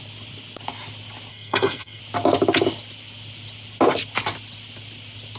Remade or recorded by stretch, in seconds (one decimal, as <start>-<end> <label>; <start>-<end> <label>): 0.0-1.3 recorded; 1.3-2.0 remade; 2.0-5.4 recorded

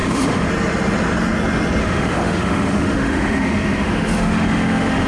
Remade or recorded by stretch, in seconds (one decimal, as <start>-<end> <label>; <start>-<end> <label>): 0.0-0.5 remade; 0.5-1.8 recorded; 1.8-5.1 remade

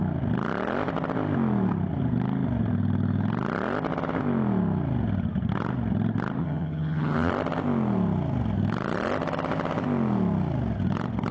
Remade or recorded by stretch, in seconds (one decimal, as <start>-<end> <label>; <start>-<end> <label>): 0.0-6.4 recorded; 6.4-7.3 remade; 7.3-11.3 recorded

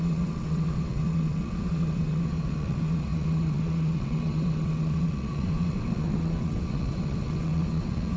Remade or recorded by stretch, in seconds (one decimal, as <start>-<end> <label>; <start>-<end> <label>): 0.0-8.2 remade

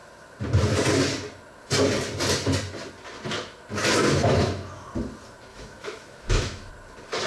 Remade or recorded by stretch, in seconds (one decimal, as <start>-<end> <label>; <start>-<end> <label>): 0.0-4.2 recorded; 4.2-4.9 remade; 4.9-5.5 recorded; 5.5-6.7 remade; 6.7-7.3 recorded

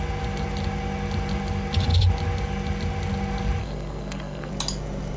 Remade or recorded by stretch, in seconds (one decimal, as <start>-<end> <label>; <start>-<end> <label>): 0.0-3.6 recorded; 3.6-4.5 remade; 4.5-5.2 recorded

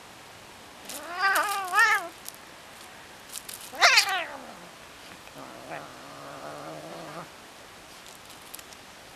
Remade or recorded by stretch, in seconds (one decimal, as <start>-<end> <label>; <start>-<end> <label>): 0.0-5.9 recorded; 5.9-7.3 remade; 7.3-9.2 recorded